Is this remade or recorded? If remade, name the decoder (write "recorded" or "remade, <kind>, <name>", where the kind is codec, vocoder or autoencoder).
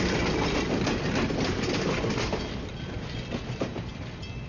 recorded